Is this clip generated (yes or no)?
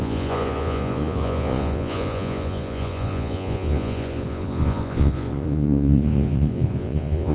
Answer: yes